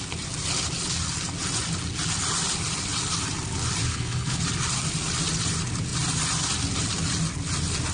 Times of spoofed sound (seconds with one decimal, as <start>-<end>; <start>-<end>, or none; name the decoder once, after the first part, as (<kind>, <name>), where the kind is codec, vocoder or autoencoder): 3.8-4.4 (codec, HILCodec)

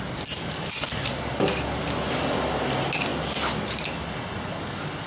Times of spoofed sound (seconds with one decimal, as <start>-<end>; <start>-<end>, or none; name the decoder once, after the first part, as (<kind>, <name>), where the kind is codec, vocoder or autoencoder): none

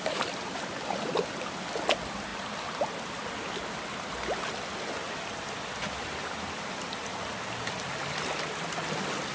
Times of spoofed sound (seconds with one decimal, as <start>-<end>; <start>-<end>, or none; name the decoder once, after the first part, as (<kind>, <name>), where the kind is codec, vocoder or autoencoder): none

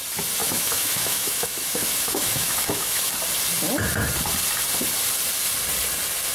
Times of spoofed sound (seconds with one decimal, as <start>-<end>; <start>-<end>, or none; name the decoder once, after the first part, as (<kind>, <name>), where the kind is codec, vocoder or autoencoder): 0.4-3.1 (autoencoder, DAC-VAE)

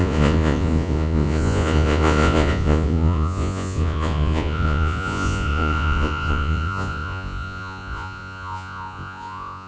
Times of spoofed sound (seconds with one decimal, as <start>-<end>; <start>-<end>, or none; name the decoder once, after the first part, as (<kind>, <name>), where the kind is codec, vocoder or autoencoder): 0.0-9.7 (vocoder, Vocos)

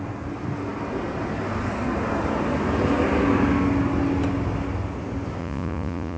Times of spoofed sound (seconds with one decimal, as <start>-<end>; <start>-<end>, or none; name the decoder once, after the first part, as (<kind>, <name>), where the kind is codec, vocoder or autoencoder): 5.4-6.2 (vocoder, Vocos)

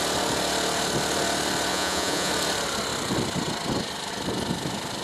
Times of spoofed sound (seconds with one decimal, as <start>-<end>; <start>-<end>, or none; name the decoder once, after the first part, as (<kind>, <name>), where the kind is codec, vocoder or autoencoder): 1.7-2.3 (vocoder, Vocos)

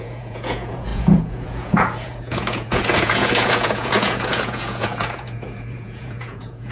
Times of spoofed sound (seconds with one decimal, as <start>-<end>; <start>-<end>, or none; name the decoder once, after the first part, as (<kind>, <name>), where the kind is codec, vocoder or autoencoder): 0.0-6.7 (vocoder, Vocos)